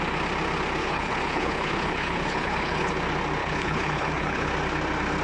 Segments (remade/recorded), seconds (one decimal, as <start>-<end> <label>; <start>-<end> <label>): 0.0-0.8 recorded; 0.8-2.9 remade; 2.9-3.4 recorded; 3.4-4.5 remade; 4.5-5.2 recorded